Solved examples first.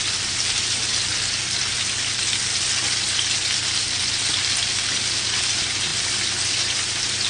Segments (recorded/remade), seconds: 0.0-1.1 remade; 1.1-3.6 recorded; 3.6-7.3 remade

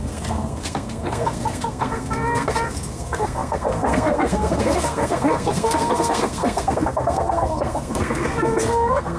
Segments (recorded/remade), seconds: 0.0-9.2 remade

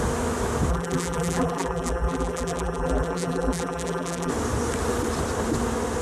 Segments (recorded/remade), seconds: 0.0-0.7 recorded; 0.7-4.3 remade; 4.3-6.0 recorded